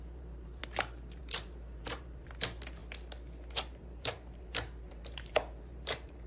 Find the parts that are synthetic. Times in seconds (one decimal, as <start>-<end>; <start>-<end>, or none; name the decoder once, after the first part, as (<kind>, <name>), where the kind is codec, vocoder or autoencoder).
0.0-0.6 (vocoder, BigVGAN v2); 1.2-2.8; 3.5-6.3